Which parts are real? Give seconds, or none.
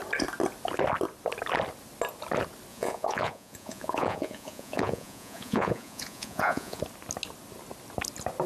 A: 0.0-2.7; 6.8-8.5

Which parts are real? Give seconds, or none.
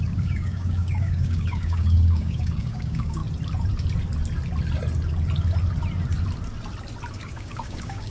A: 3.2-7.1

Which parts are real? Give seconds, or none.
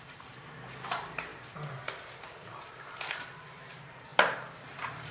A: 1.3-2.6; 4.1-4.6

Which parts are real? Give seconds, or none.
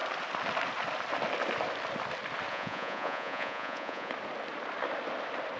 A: 0.0-2.5; 4.1-5.6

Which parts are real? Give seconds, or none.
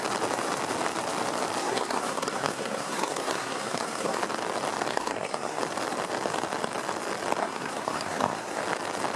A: 0.0-1.6; 4.2-4.9; 5.6-7.4; 8.6-9.2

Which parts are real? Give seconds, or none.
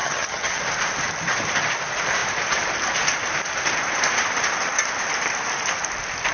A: 0.6-6.3